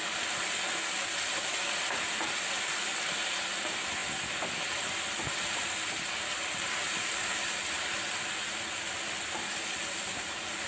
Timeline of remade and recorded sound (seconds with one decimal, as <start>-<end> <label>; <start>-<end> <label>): 0.0-10.7 recorded